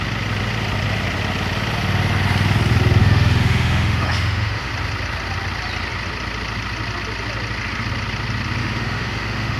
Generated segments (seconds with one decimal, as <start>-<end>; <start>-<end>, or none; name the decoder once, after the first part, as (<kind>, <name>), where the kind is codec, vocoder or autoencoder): 3.0-4.7 (autoencoder, DAC-VAE); 8.6-9.6